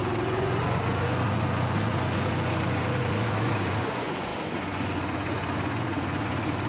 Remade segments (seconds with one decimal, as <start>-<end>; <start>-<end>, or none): 0.0-6.7